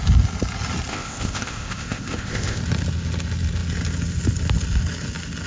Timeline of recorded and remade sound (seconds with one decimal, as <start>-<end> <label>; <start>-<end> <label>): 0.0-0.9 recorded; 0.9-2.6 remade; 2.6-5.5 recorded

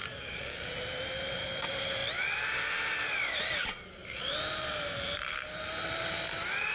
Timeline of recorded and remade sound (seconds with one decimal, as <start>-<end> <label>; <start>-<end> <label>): 0.0-2.0 remade; 2.0-3.5 recorded; 3.5-6.7 remade

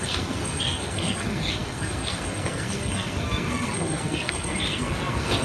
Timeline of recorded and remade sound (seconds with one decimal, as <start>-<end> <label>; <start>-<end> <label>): 0.0-5.4 remade

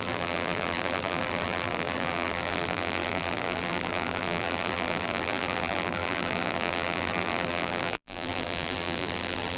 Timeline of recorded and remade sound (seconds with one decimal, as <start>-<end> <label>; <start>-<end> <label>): 0.0-9.6 remade

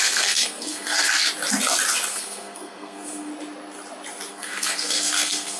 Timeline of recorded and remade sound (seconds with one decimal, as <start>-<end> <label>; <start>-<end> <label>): 0.0-1.1 remade; 1.1-2.1 recorded; 2.1-3.3 remade; 3.3-4.3 recorded; 4.3-5.6 remade

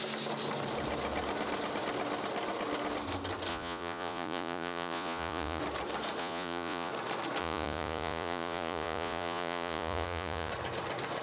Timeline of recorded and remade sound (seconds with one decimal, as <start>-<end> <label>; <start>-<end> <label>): 0.0-3.5 recorded; 3.5-5.6 remade; 5.6-6.2 recorded; 6.2-6.9 remade; 6.9-7.4 recorded; 7.4-10.5 remade; 10.5-11.2 recorded

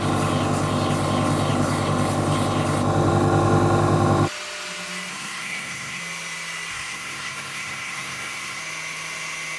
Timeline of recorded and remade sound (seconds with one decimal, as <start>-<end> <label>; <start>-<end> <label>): 0.0-5.1 recorded; 5.1-6.0 remade; 6.0-6.7 recorded; 6.7-8.6 remade; 8.6-9.6 recorded

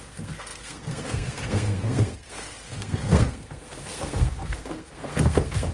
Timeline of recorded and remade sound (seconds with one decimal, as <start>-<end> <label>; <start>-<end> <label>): 0.0-5.7 remade